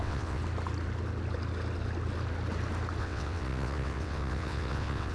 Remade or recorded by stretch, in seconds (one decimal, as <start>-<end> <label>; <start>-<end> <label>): 0.0-0.4 remade; 0.4-3.0 recorded; 3.0-5.1 remade